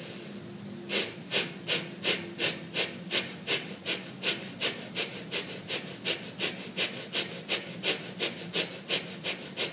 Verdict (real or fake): real